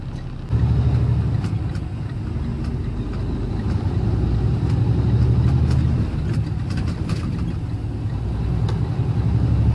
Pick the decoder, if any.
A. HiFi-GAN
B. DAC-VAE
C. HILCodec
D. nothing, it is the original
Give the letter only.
D